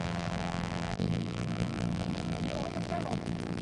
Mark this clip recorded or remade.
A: remade